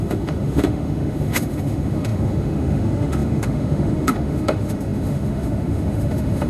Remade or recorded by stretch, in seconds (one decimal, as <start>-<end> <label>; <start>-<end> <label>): 0.0-6.5 remade